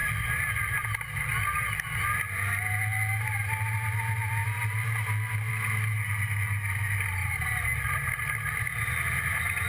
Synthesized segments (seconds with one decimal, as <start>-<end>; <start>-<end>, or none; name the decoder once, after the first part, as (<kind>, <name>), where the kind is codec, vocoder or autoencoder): none